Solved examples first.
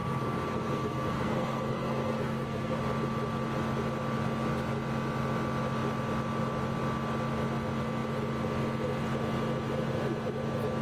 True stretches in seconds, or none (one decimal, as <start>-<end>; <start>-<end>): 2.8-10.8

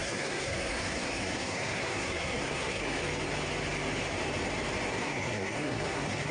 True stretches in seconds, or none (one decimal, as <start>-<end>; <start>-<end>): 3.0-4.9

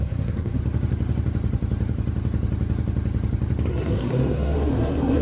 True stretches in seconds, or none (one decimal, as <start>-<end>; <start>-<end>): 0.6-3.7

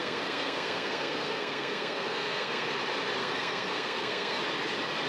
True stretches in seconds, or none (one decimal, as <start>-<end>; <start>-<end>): 2.8-3.2; 4.4-5.1